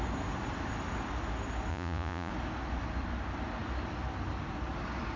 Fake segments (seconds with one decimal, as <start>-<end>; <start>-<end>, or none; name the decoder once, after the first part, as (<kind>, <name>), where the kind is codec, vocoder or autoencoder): 1.7-2.3 (vocoder, Vocos)